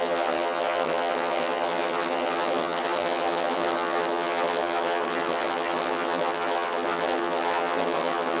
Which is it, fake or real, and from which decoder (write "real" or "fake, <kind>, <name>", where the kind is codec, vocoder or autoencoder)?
fake, vocoder, HiFi-GAN